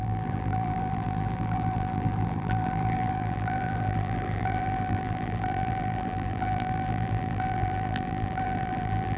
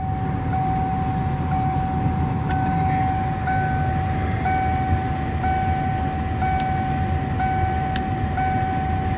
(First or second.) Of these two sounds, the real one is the second